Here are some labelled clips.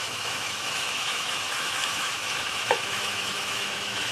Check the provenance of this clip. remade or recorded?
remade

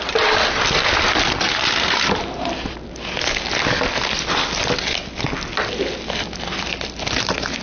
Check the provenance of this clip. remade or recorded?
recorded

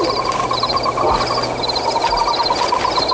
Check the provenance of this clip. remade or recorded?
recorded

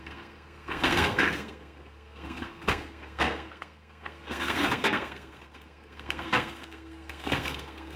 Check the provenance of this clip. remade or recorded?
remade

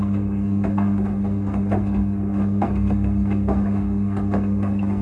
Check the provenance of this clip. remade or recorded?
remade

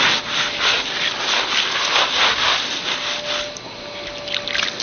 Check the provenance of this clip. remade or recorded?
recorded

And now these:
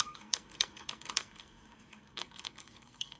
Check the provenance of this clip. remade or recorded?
remade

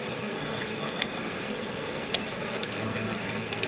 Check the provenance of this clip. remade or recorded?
remade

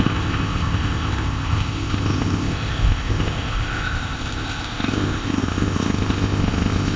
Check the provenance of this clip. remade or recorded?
remade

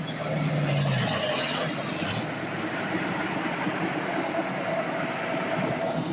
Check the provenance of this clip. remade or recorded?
recorded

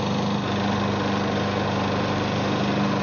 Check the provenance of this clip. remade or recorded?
recorded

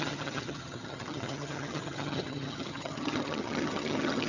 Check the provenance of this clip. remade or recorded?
remade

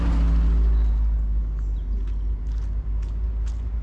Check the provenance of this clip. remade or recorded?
recorded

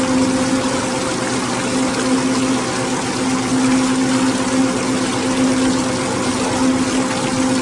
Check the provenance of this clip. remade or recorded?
recorded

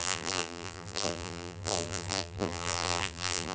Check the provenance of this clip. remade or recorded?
remade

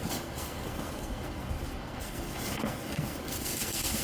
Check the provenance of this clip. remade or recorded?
remade